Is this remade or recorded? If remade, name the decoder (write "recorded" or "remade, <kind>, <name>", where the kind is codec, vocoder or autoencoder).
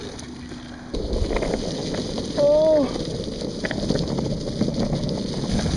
recorded